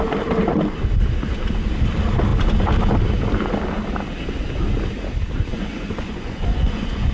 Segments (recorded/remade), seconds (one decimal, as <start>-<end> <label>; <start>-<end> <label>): 0.0-5.5 recorded; 5.5-7.1 remade